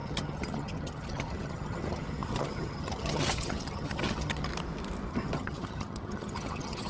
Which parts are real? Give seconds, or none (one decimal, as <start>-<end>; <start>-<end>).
4.5-5.1